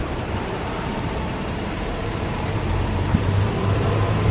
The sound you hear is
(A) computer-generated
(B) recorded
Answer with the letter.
A